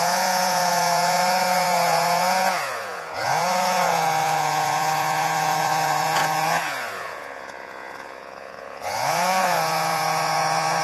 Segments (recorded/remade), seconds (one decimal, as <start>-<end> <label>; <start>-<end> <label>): 0.0-10.8 remade